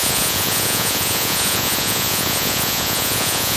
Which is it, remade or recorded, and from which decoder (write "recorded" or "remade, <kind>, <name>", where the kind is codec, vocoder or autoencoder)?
remade, vocoder, Vocos